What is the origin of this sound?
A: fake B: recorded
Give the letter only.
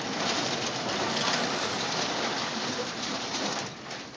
B